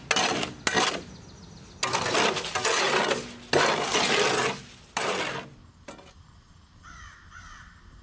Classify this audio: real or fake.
real